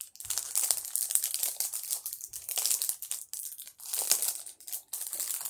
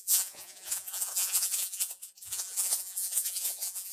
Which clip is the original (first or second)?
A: first